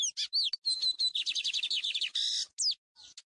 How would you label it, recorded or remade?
recorded